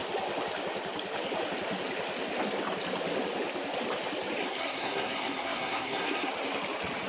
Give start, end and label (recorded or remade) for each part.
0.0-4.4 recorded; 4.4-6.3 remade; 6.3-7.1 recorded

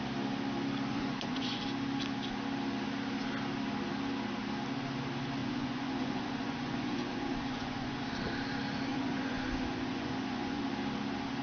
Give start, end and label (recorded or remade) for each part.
0.0-0.9 recorded; 0.9-1.6 remade; 1.6-5.4 recorded; 5.4-8.0 remade; 8.0-8.9 recorded; 8.9-10.6 remade; 10.6-11.4 recorded

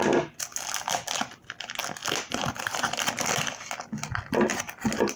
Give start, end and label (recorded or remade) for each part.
0.0-5.2 recorded